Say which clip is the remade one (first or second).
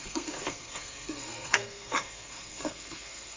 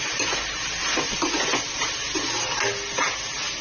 first